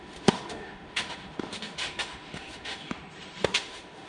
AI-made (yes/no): yes